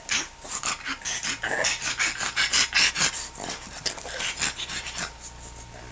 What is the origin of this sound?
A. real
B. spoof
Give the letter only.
A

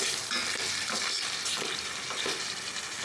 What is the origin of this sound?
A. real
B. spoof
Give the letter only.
A